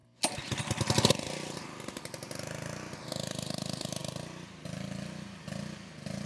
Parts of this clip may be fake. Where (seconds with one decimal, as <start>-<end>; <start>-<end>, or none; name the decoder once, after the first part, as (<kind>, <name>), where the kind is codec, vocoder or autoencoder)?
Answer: none